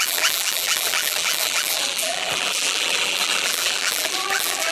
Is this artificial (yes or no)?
yes